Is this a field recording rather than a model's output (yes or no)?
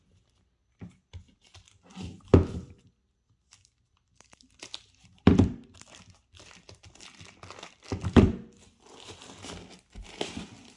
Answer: no